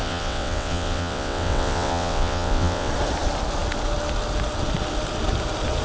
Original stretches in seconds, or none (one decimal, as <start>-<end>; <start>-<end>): 2.9-5.8